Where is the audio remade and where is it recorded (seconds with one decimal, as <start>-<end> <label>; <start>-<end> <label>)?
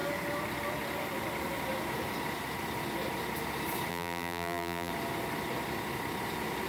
0.0-3.9 recorded; 3.9-4.9 remade; 4.9-6.7 recorded